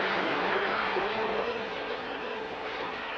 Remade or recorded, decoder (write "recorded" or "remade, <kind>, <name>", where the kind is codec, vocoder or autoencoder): remade, codec, SNAC